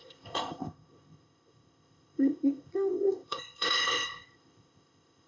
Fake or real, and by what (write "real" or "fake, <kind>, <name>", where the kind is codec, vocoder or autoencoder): fake, codec, ZipCodec